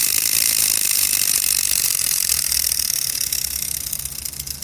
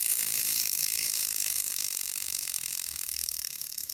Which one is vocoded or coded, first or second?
second